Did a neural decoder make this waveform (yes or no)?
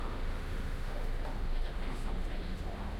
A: yes